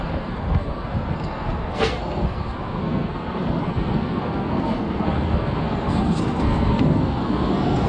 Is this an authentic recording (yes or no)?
no